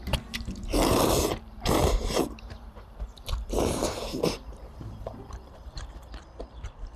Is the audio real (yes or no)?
no